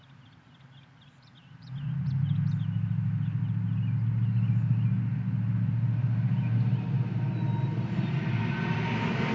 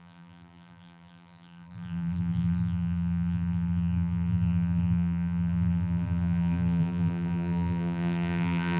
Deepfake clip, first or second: second